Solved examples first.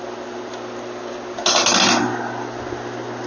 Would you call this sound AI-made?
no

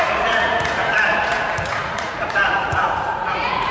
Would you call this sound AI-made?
yes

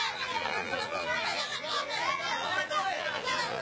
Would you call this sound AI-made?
yes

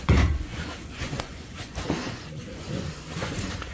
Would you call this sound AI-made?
yes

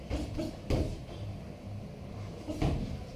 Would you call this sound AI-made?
no